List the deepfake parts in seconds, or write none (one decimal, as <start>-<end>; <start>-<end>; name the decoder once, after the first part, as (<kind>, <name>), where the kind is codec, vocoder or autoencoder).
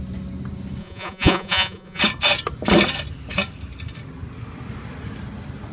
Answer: 0.8-2.0 (vocoder, Vocos)